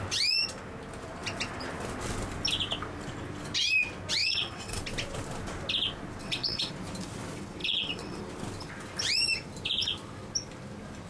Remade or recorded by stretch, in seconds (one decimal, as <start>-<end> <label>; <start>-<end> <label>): 0.0-4.2 recorded; 4.2-4.8 remade; 4.8-6.2 recorded; 6.2-6.7 remade; 6.7-7.6 recorded; 7.6-8.2 remade; 8.2-11.1 recorded